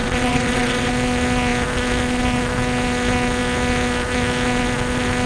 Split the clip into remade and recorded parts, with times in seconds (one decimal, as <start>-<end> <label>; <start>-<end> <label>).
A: 0.0-0.9 remade; 0.9-5.3 recorded

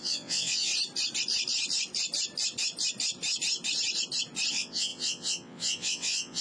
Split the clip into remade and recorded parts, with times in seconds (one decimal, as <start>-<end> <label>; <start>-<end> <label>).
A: 0.0-0.7 remade; 0.7-4.5 recorded; 4.5-6.4 remade

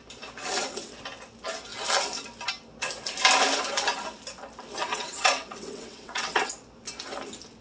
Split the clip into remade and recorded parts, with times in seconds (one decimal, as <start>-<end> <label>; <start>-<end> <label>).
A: 0.0-4.9 recorded; 4.9-6.5 remade; 6.5-7.6 recorded

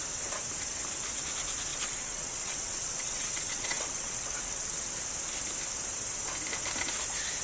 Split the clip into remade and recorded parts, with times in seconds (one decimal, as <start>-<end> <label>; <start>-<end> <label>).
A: 0.0-1.7 recorded; 1.7-4.9 remade; 4.9-7.4 recorded

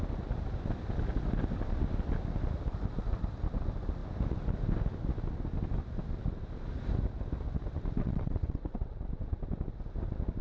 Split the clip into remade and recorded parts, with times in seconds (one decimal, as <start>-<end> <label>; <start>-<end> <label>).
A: 0.0-8.0 recorded; 8.0-8.9 remade; 8.9-10.4 recorded

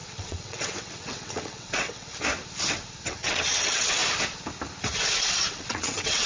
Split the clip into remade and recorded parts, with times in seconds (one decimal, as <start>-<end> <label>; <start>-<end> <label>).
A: 0.0-2.1 remade; 2.1-3.0 recorded; 3.0-4.0 remade; 4.0-5.5 recorded; 5.5-6.3 remade

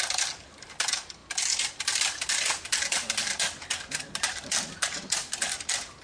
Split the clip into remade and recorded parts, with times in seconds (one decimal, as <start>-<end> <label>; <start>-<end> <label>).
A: 0.0-6.0 recorded